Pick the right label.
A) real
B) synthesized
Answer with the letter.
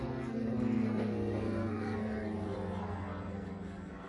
B